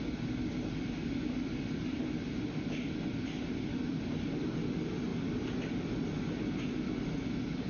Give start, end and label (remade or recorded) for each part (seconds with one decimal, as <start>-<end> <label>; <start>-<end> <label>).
0.0-7.7 recorded